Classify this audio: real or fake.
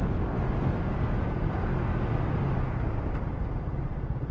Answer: real